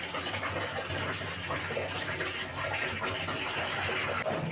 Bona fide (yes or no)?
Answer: yes